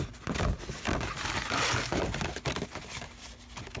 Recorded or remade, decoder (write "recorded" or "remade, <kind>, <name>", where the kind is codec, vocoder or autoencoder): recorded